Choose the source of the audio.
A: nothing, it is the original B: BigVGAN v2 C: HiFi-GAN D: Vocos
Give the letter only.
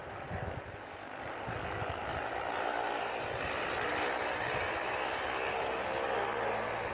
A